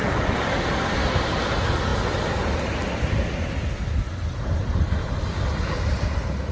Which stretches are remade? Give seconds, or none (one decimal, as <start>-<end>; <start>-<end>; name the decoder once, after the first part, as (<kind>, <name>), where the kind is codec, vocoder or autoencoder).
none